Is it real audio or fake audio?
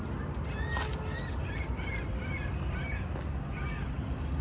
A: real